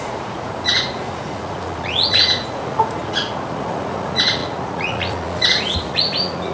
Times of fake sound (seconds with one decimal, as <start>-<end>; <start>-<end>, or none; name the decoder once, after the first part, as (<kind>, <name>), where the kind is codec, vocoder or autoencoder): 0.0-6.5 (vocoder, Vocos)

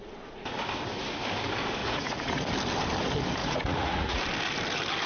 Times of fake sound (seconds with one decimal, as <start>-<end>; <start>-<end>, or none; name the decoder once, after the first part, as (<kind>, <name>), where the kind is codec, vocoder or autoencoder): 1.8-2.5 (vocoder, Vocos); 3.4-4.2

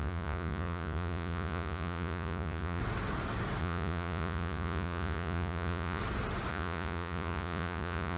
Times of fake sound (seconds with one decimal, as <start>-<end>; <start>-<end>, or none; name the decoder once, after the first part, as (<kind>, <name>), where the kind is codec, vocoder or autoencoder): 0.0-2.8 (vocoder, Vocos); 3.6-6.0; 6.5-8.2

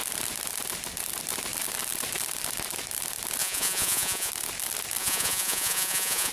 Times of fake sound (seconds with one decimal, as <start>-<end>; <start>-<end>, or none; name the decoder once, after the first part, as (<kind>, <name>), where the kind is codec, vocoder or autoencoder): 3.4-4.3 (vocoder, Vocos); 5.0-6.3

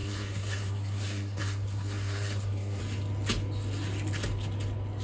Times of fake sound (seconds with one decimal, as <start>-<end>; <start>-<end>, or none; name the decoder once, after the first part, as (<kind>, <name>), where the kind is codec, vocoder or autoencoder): 0.0-2.8 (codec, SNAC)

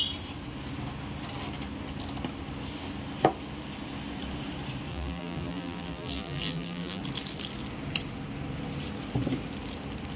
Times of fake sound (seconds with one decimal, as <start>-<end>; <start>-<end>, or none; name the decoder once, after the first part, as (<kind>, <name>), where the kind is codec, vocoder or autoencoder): 4.9-7.0 (vocoder, BigVGAN v2)

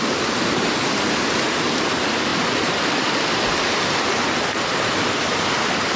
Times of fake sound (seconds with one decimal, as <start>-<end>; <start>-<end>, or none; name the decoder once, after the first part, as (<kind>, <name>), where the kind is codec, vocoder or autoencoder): none

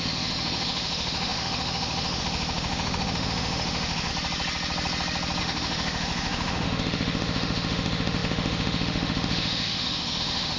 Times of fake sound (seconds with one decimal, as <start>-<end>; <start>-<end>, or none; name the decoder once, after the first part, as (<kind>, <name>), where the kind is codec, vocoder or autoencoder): 0.0-4.1 (autoencoder, DAC-VAE); 5.4-10.6